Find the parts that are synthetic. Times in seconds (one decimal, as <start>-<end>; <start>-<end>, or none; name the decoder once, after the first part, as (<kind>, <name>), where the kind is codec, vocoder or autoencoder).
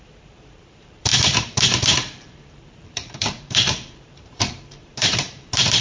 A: 0.0-5.8 (vocoder, BigVGAN v2)